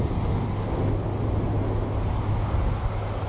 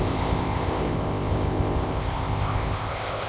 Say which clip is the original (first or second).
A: first